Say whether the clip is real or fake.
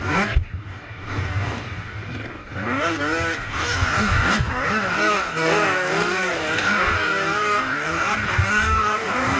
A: fake